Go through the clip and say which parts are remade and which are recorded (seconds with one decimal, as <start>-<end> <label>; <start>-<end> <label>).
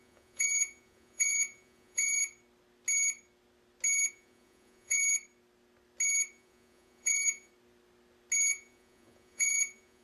0.0-2.2 remade; 2.2-4.1 recorded; 4.1-5.0 remade; 5.0-6.3 recorded; 6.3-7.5 remade; 7.5-8.5 recorded; 8.5-10.0 remade